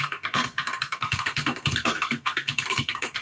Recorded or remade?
remade